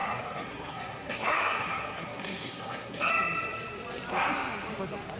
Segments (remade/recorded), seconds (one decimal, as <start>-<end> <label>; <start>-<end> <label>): 0.0-3.1 remade; 3.1-5.2 recorded